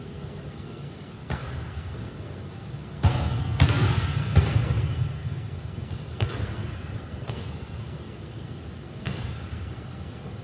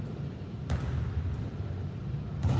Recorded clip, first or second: second